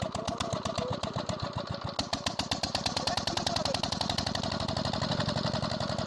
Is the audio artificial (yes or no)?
no